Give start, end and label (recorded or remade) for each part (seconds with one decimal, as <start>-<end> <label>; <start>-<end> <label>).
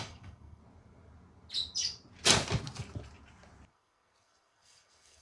0.0-0.6 remade; 0.6-3.7 recorded; 3.7-5.2 remade